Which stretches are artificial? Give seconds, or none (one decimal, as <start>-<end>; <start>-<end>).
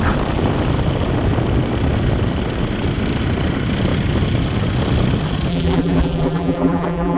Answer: 5.5-7.2